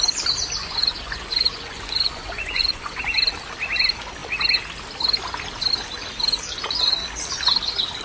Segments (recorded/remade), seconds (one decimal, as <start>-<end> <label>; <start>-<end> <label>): 0.0-0.6 recorded; 0.6-3.0 remade; 3.0-8.0 recorded